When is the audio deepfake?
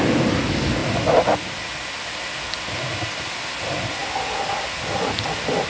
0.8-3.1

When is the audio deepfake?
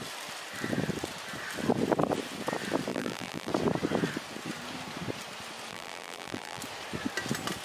2.9-3.5; 5.7-6.6